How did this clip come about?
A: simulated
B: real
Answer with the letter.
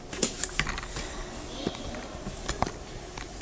B